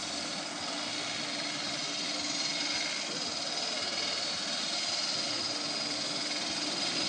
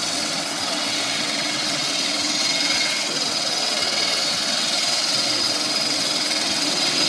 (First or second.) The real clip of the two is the first